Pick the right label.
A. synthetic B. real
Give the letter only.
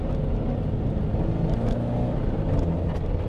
B